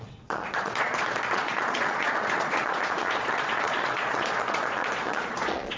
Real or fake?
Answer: fake